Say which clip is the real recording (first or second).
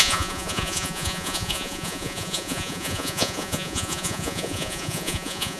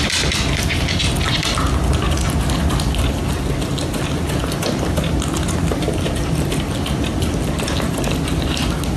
second